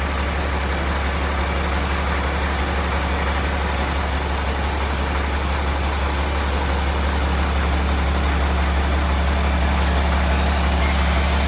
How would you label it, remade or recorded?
recorded